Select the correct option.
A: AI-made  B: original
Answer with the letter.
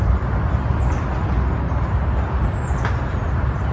B